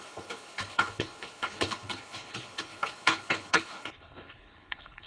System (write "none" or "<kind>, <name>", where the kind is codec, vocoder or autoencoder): codec, HILCodec